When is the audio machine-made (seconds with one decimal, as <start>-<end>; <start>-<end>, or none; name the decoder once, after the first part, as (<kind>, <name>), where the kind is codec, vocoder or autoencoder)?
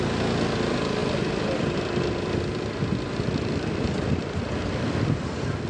1.0-4.4 (vocoder, BigVGAN v2)